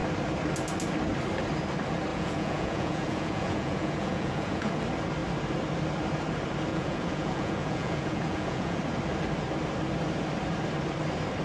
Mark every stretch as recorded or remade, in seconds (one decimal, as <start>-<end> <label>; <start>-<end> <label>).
0.0-2.1 recorded; 2.1-4.7 remade; 4.7-6.7 recorded; 6.7-8.8 remade; 8.8-11.4 recorded